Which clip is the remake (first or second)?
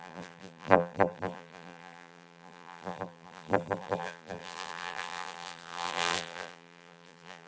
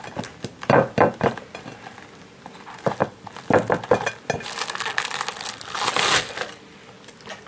first